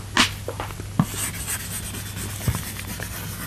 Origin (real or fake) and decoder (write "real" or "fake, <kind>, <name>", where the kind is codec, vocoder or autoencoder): real